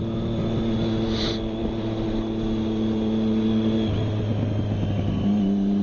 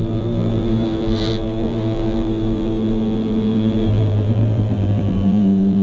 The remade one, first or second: second